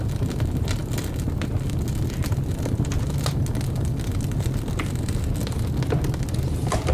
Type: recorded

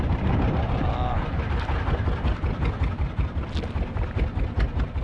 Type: recorded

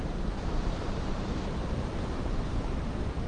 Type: remade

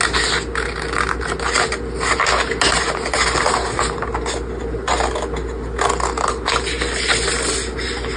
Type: recorded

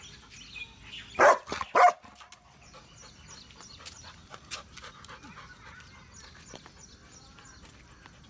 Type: recorded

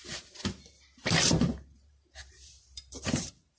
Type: remade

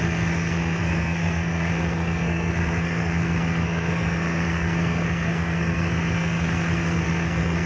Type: remade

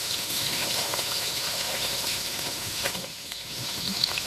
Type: remade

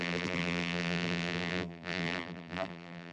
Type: remade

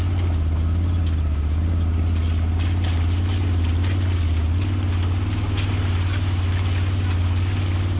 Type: recorded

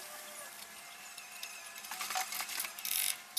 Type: recorded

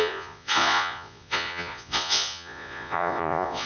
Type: remade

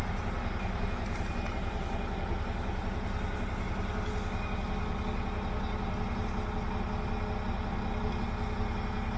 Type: recorded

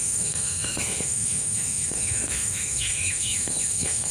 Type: remade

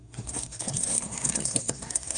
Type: remade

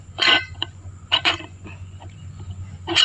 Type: remade